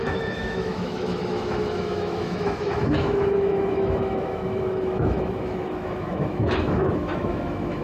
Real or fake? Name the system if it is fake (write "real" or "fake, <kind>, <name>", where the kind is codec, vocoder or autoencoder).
fake, autoencoder, DAC-VAE